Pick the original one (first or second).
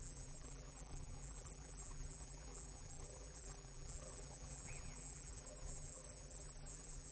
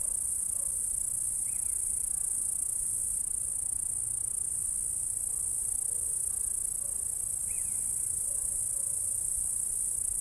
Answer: second